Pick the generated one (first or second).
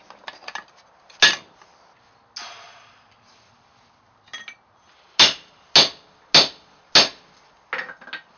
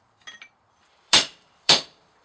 second